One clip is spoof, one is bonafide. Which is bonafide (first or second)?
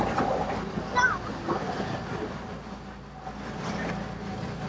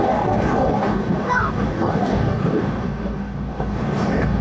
first